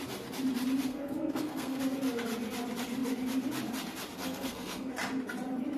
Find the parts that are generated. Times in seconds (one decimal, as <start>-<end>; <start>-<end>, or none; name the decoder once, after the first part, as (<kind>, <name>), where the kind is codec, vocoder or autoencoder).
0.9-1.8 (codec, SNAC); 4.2-4.9